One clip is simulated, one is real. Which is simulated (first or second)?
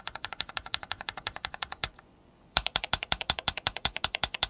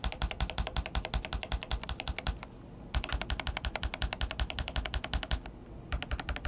first